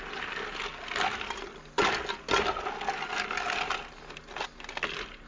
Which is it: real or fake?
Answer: real